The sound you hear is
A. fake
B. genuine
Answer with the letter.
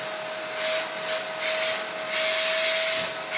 B